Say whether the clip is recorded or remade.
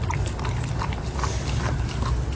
recorded